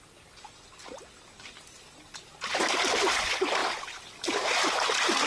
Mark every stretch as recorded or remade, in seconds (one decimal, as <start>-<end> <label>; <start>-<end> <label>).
0.0-5.3 recorded